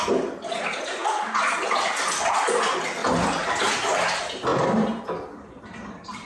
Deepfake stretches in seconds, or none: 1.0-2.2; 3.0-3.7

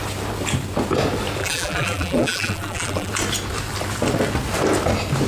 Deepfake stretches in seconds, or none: 1.4-3.1

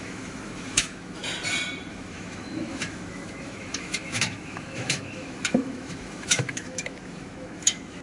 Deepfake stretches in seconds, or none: 0.0-1.2; 1.9-8.0

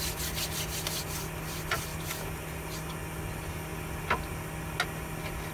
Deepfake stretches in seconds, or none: none

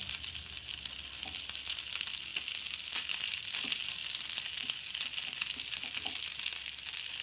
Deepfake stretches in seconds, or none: none